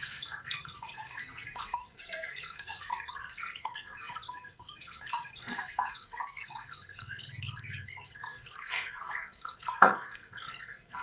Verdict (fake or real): fake